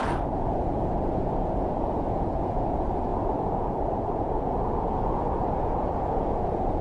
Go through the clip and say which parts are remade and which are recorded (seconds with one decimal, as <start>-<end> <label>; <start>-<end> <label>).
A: 0.0-6.8 remade